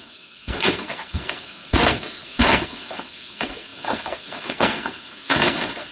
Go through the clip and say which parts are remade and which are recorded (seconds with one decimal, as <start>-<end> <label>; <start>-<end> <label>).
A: 0.0-5.9 remade